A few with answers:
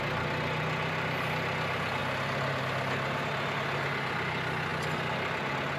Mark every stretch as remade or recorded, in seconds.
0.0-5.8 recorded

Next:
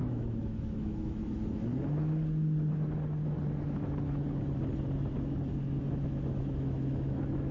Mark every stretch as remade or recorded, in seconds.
0.0-1.7 remade; 1.7-5.8 recorded; 5.8-7.5 remade

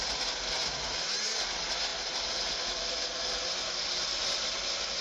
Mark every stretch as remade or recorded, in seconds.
0.0-5.0 recorded

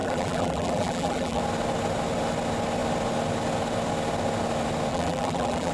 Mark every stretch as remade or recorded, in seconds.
0.0-1.4 remade; 1.4-4.9 recorded; 4.9-5.7 remade

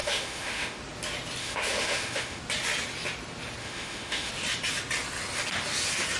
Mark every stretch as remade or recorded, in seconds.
0.0-0.8 remade; 0.8-1.4 recorded; 1.4-2.4 remade; 2.4-3.6 recorded; 3.6-4.3 remade; 4.3-6.2 recorded

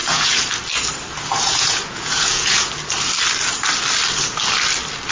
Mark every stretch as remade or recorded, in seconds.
0.0-0.5 remade; 0.5-1.3 recorded; 1.3-2.7 remade; 2.7-5.1 recorded

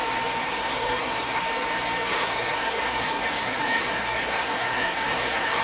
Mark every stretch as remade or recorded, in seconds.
0.0-0.4 recorded; 0.4-1.4 remade; 1.4-2.1 recorded; 2.1-5.6 remade